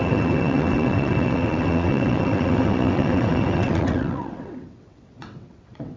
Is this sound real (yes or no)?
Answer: no